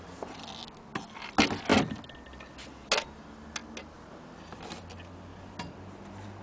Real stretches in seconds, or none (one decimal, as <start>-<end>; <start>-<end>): 0.0-6.4